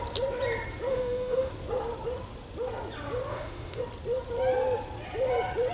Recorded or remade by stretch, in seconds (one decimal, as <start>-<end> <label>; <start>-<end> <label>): 0.0-0.9 recorded; 0.9-1.5 remade; 1.5-3.3 recorded; 3.3-3.8 remade; 3.8-5.7 recorded